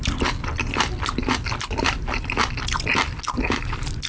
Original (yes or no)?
yes